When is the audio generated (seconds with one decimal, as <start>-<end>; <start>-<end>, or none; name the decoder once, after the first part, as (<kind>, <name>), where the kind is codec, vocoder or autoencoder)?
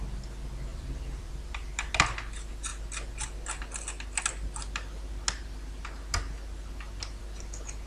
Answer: 0.7-1.3 (vocoder, BigVGAN v2)